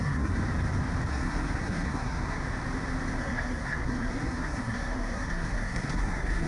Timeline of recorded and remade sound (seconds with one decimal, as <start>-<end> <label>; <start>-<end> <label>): 0.0-0.4 remade; 0.4-1.1 recorded; 1.1-2.4 remade; 2.4-3.2 recorded; 3.2-6.5 remade